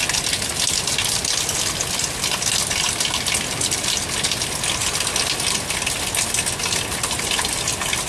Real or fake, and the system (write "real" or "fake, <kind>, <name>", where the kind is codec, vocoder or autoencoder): real